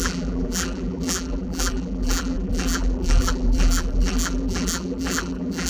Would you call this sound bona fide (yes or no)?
no